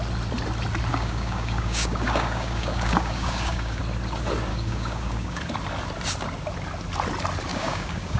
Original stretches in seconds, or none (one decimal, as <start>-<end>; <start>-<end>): 0.0-0.9; 3.8-4.5; 5.4-7.5

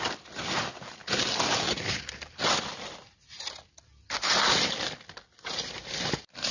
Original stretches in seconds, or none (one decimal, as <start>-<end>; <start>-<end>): 0.0-6.5

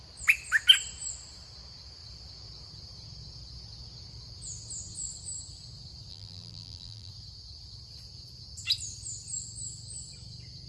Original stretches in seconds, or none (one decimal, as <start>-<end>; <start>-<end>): 0.0-6.1; 7.1-10.7

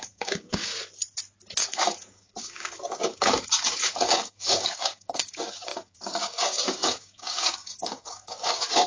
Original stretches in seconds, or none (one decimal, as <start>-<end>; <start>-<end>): 0.7-1.6

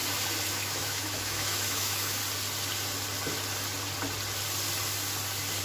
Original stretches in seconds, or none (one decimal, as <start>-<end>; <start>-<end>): 0.0-0.5; 2.2-5.6